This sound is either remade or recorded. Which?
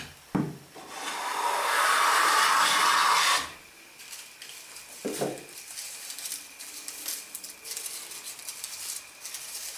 recorded